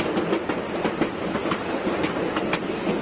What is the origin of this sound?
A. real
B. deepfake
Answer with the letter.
A